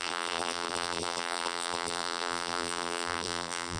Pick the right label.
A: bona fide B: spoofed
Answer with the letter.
B